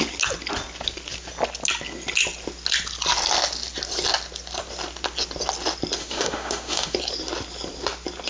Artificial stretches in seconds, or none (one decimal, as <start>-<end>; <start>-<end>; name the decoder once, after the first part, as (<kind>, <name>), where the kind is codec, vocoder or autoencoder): 6.0-7.0 (autoencoder, DAC-VAE)